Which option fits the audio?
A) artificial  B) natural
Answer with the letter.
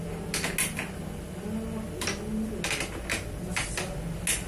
B